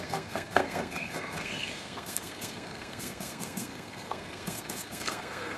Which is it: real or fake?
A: fake